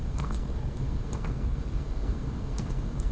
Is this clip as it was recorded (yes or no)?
no